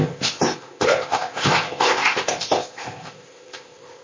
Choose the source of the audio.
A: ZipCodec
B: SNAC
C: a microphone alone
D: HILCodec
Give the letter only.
A